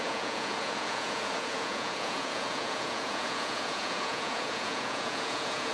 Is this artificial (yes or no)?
yes